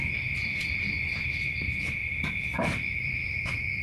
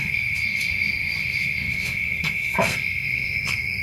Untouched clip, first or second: first